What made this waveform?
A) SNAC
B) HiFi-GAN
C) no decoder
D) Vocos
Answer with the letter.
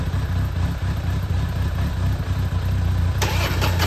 C